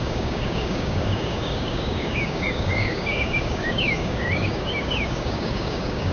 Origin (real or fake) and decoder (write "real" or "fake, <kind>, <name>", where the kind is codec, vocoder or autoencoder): fake, codec, DAC